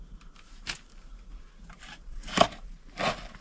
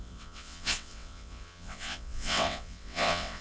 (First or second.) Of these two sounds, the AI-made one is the second